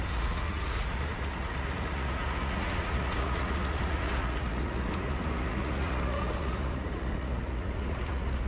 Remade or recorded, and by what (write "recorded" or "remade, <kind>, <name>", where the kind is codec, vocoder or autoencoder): remade, vocoder, Vocos